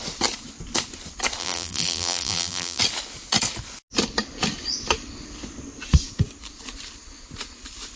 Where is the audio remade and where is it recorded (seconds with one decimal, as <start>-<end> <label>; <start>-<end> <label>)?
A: 0.0-1.4 recorded; 1.4-2.8 remade; 2.8-8.0 recorded